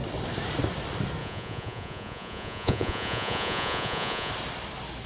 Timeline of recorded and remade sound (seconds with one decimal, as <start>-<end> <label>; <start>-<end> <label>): 0.0-1.2 recorded; 1.2-4.3 remade; 4.3-5.1 recorded